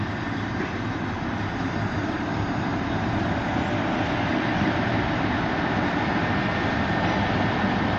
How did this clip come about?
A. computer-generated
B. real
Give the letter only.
B